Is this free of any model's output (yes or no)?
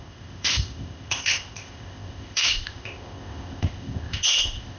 no